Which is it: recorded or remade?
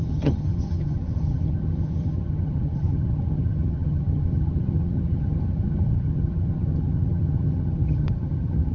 remade